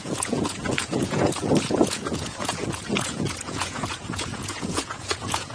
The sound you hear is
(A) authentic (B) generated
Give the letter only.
B